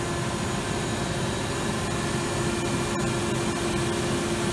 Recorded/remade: recorded